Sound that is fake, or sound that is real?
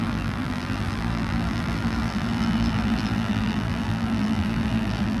fake